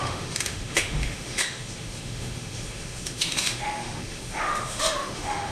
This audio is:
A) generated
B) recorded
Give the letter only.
A